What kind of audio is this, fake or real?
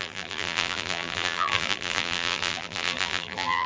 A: fake